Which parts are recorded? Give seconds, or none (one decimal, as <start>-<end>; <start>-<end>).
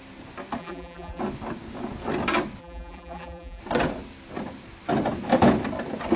0.0-0.6; 1.2-2.6; 3.6-6.2